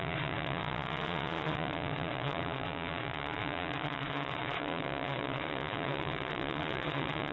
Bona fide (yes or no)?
no